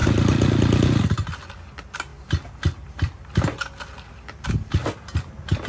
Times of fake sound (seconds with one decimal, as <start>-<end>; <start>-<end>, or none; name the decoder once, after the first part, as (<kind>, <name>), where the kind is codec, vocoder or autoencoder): none